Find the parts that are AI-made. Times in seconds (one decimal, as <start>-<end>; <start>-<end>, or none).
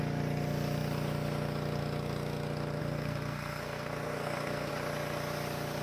2.8-4.7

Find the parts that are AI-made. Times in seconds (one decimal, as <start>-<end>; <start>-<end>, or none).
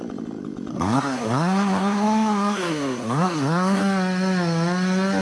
0.7-3.8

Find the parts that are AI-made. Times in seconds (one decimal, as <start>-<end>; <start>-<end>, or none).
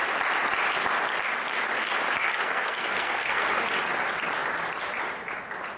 2.2-3.6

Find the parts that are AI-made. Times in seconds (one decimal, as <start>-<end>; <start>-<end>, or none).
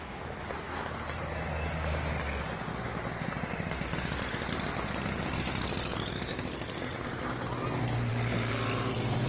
none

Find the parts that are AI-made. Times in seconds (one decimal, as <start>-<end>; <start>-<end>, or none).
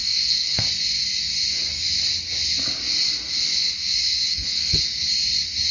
0.0-0.6; 4.3-4.8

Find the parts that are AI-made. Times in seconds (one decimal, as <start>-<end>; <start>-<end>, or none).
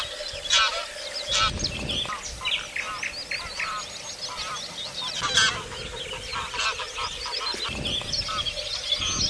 none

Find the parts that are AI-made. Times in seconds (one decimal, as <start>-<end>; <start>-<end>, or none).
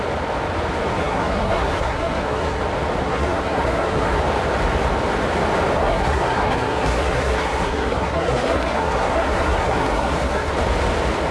1.0-2.6; 3.0-4.2; 5.8-10.5